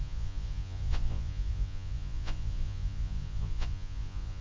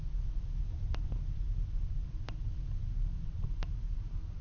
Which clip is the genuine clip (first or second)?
second